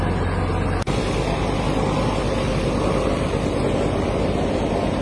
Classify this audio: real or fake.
real